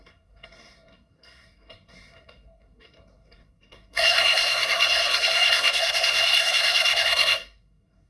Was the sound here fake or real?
fake